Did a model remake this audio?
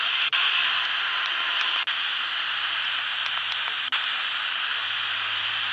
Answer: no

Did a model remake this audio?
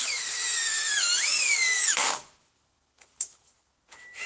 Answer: yes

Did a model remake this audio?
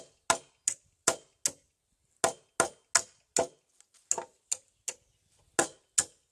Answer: no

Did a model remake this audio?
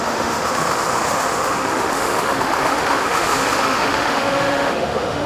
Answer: yes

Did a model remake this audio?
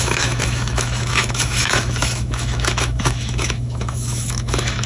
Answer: yes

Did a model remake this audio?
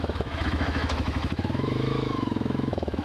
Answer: yes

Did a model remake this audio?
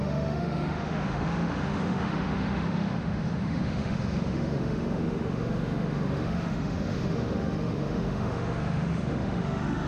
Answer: yes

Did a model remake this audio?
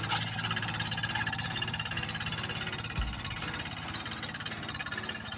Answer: no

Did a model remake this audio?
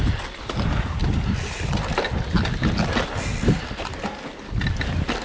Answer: no